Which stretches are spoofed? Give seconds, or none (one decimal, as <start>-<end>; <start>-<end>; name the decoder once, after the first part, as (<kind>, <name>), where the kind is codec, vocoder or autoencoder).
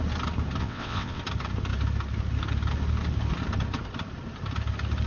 0.6-1.2 (vocoder, WaveNeXt)